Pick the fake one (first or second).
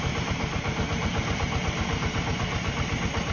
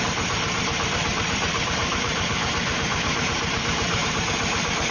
second